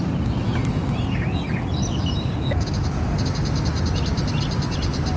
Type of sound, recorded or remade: recorded